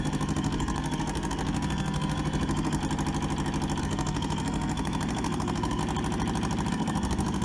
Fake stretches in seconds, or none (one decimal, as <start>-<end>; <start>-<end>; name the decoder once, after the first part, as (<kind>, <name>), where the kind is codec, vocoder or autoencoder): 0.0-2.8 (codec, SNAC); 3.8-5.8; 6.7-7.4

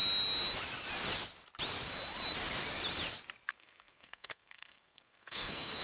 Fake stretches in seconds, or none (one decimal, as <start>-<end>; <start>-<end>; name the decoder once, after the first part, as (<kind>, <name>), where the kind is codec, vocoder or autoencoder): 3.5-5.8 (codec, SNAC)

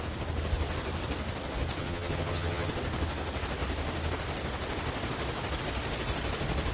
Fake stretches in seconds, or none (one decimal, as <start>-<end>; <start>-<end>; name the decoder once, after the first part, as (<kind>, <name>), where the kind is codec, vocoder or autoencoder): 1.8-2.7 (vocoder, HiFi-GAN)

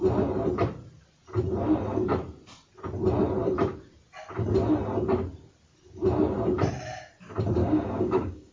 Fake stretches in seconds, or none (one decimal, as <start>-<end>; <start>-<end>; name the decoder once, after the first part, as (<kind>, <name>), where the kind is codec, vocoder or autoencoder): 7.6-8.5 (codec, DAC)

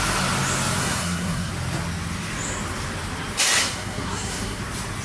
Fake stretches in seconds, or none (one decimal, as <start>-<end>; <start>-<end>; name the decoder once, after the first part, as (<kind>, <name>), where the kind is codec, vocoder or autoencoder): 0.8-1.5 (codec, SNAC); 3.6-4.6

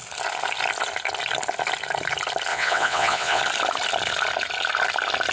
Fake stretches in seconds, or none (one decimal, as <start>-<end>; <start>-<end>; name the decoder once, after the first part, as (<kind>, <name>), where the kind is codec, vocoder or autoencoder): 2.5-3.4 (vocoder, WaveNeXt)

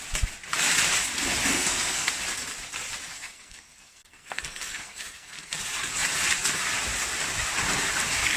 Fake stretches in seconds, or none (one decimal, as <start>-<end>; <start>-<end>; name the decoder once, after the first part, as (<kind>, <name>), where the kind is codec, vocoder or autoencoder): 1.5-2.1 (codec, SNAC); 3.1-5.6

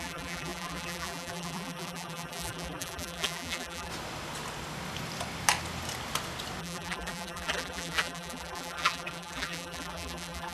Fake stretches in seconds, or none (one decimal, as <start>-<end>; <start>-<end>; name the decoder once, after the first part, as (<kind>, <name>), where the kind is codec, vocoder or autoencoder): 0.0-3.9 (vocoder, BigVGAN v2); 6.6-10.5